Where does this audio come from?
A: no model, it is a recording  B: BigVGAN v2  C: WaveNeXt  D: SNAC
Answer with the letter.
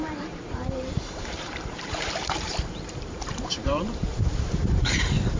B